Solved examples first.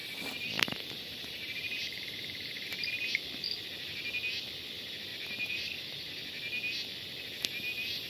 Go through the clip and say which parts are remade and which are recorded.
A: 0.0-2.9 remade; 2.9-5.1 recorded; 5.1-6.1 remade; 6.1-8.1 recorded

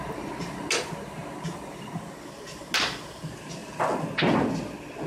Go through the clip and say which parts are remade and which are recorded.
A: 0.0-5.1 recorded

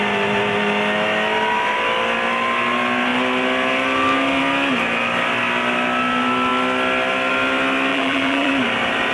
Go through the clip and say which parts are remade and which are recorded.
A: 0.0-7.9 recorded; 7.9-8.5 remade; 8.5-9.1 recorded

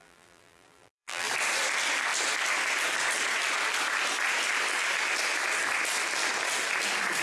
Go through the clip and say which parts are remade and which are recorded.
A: 0.0-1.3 remade; 1.3-7.2 recorded

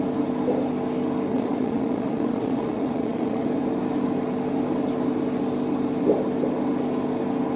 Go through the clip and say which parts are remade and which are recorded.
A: 0.0-1.3 recorded; 1.3-3.5 remade; 3.5-7.6 recorded

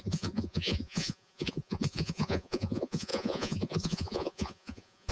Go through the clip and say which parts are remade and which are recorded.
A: 0.0-5.1 remade

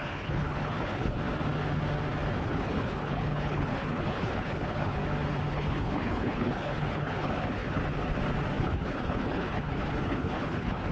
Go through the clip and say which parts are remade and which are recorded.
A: 0.0-1.2 remade; 1.2-2.4 recorded; 2.4-5.0 remade; 5.0-5.5 recorded; 5.5-7.8 remade; 7.8-8.6 recorded; 8.6-10.9 remade